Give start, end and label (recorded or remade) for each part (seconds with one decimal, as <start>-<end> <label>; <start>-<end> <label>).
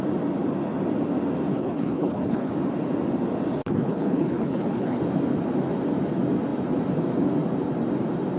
0.0-1.5 recorded; 1.5-2.5 remade; 2.5-3.6 recorded; 3.6-5.0 remade; 5.0-8.4 recorded